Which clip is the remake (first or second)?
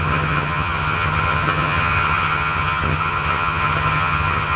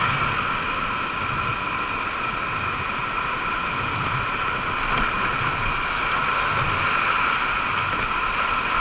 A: first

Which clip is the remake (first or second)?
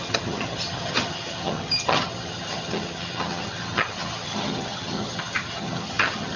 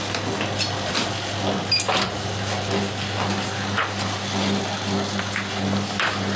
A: first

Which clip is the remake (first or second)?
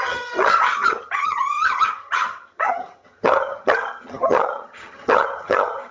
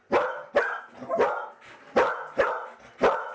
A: first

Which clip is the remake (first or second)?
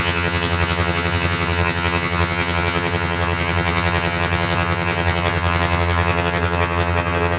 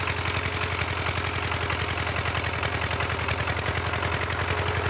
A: first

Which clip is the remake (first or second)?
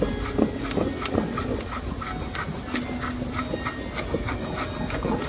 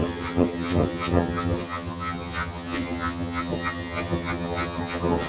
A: second